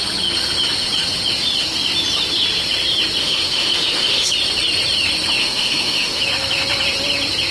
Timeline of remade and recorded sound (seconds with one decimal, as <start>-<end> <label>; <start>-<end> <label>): 0.0-3.2 recorded; 3.2-4.3 remade; 4.3-5.4 recorded; 5.4-6.2 remade; 6.2-7.5 recorded

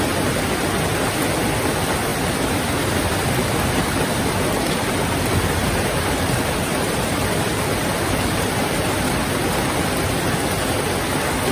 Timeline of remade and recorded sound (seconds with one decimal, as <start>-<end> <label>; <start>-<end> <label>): 0.0-5.6 recorded; 5.6-9.1 remade; 9.1-11.5 recorded

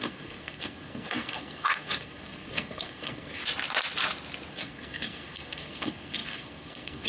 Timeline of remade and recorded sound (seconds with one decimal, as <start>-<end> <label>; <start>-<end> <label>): 0.0-3.4 remade; 3.4-4.5 recorded; 4.5-7.1 remade

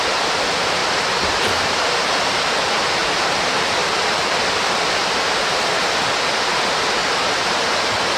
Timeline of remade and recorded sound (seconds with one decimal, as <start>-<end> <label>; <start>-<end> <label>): 0.0-0.8 recorded; 0.8-2.0 remade; 2.0-3.0 recorded; 3.0-5.6 remade; 5.6-7.0 recorded; 7.0-7.6 remade; 7.6-8.2 recorded

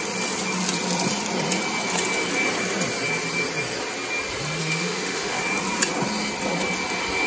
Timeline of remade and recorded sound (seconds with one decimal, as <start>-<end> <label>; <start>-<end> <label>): 0.0-4.6 recorded; 4.6-5.4 remade; 5.4-7.3 recorded